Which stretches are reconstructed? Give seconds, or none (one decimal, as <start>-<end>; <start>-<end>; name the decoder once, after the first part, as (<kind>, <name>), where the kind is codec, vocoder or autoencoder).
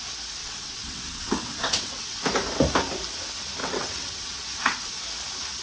0.4-2.2 (vocoder, WaveNeXt); 3.6-4.9